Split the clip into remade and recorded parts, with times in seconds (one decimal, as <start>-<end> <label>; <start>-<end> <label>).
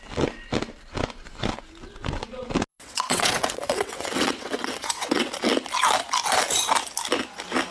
0.0-2.7 recorded; 2.7-5.3 remade; 5.3-7.7 recorded